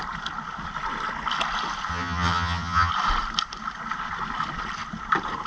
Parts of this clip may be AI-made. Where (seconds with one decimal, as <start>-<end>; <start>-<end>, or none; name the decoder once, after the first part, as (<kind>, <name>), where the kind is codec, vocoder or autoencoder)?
1.9-2.9 (vocoder, HiFi-GAN)